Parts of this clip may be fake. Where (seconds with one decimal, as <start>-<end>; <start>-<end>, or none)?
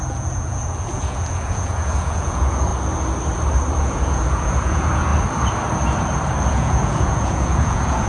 0.0-2.7; 3.8-5.1; 6.5-8.1